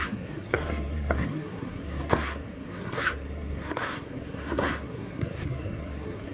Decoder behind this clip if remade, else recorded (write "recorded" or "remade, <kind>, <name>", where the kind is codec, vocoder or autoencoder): remade, codec, SNAC